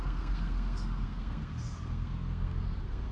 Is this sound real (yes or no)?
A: no